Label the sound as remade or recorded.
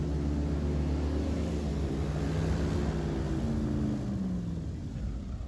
recorded